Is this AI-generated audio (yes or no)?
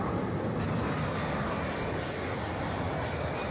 no